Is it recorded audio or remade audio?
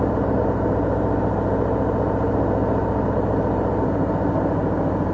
recorded